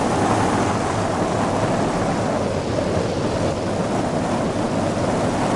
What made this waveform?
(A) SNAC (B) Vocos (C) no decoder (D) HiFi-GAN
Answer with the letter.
C